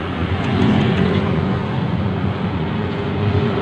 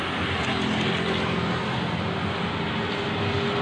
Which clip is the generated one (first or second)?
first